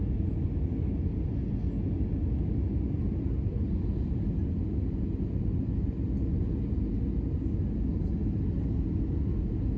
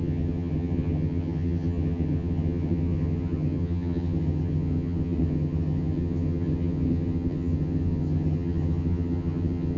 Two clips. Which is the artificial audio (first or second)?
second